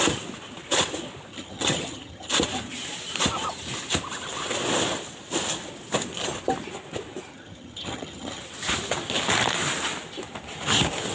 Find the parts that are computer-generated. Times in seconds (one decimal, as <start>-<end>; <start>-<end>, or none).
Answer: 1.3-2.3; 7.3-8.4